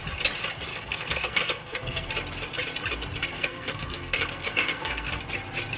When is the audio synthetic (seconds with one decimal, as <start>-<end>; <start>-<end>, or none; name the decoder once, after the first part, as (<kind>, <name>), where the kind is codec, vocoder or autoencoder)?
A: 0.7-2.1 (codec, SNAC); 3.3-5.2